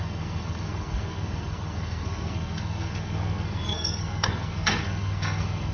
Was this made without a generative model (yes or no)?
no